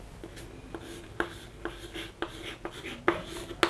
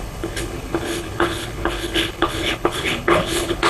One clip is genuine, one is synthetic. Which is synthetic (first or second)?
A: second